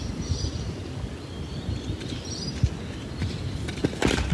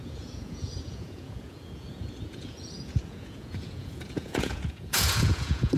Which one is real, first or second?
first